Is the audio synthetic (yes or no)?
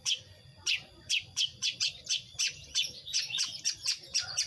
yes